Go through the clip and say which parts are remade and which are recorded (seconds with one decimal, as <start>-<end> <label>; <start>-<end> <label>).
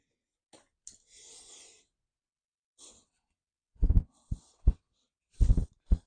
0.0-2.5 recorded; 2.5-5.3 remade; 5.3-6.1 recorded